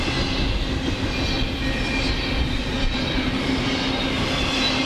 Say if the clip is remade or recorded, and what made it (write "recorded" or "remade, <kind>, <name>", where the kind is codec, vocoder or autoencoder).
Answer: recorded